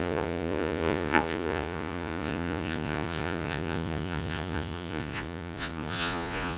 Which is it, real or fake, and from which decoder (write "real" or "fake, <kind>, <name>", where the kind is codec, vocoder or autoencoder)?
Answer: fake, vocoder, Vocos